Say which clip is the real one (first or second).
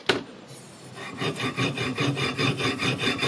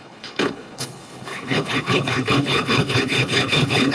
first